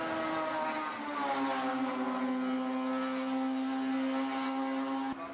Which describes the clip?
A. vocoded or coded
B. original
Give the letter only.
B